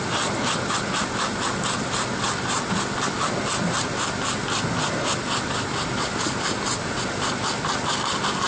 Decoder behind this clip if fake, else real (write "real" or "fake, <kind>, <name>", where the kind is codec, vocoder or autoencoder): real